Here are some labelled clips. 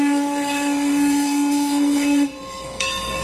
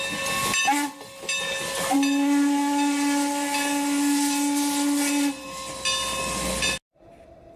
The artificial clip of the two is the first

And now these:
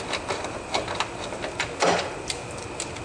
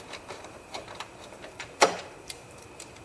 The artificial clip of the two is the second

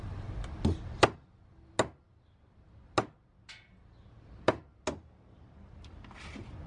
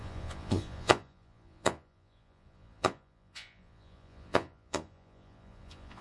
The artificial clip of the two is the second